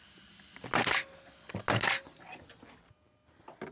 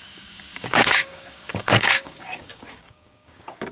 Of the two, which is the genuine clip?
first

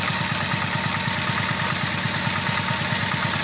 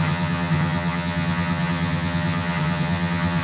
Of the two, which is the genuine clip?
first